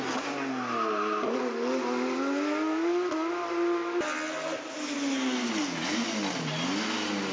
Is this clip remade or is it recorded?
recorded